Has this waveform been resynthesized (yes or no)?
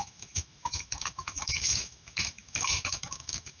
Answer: yes